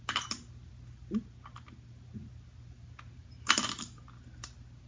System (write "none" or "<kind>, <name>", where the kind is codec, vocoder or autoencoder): none